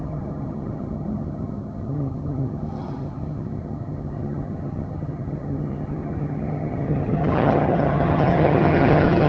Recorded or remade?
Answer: remade